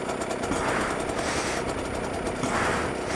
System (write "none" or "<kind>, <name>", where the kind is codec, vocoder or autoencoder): none